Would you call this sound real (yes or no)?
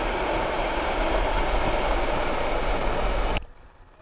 yes